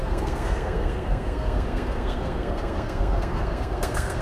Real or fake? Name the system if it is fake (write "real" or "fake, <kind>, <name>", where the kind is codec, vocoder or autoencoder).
fake, codec, SNAC